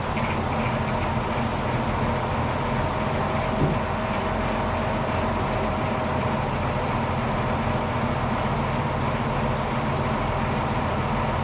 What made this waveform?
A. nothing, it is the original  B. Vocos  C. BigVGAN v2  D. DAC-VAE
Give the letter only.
A